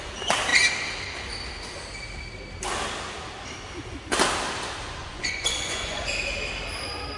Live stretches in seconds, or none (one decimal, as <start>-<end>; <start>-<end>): 0.0-5.0; 6.1-7.2